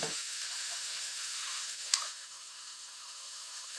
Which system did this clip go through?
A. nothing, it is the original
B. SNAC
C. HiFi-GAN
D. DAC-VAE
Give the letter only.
D